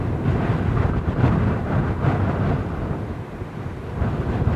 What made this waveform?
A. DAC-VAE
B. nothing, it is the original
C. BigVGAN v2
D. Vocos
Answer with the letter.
B